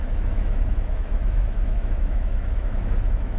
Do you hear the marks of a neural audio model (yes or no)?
yes